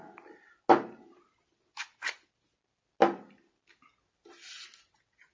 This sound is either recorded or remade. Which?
recorded